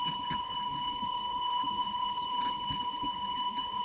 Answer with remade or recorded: remade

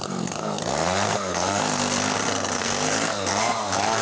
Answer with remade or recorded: remade